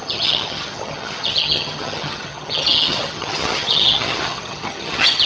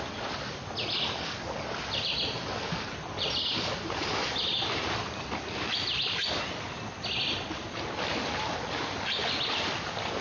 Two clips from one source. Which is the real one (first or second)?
second